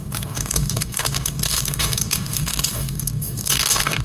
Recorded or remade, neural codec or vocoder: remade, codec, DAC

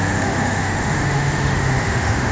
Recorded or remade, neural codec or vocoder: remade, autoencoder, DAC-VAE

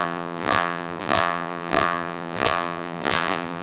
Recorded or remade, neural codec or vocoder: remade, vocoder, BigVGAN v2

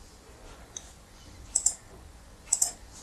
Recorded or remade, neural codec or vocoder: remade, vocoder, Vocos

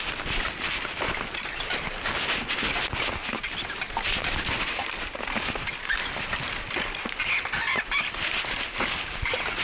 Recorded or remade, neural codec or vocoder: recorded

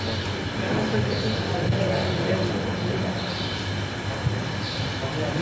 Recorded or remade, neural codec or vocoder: recorded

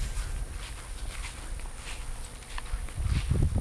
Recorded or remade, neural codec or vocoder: recorded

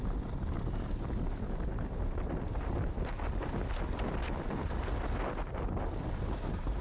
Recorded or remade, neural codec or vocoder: recorded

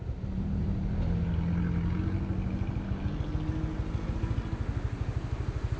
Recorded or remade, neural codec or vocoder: recorded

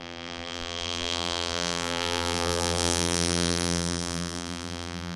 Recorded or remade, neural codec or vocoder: remade, vocoder, BigVGAN v2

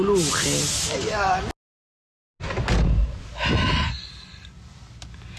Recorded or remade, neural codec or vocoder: recorded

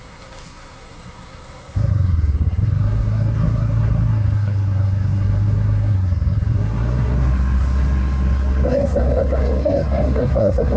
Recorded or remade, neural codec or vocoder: remade, codec, SNAC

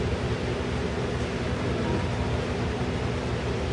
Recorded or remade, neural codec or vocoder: recorded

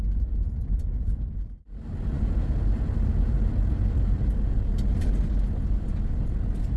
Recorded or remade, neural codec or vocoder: recorded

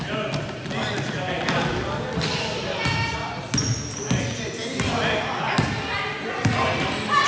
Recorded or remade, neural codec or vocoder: recorded